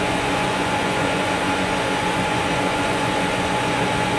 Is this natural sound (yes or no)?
no